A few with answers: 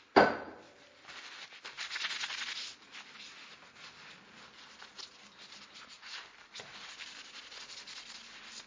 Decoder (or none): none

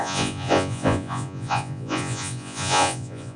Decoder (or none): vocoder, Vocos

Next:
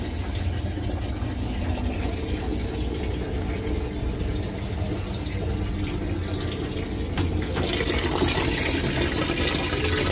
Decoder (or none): none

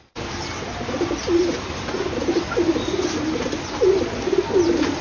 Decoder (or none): none